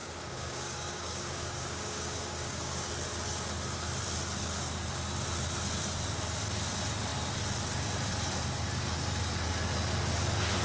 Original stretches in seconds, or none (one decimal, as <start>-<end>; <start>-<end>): 2.9-10.6